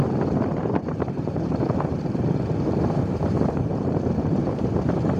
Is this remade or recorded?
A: remade